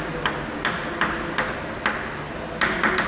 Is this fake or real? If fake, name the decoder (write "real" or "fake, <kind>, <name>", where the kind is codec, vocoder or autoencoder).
real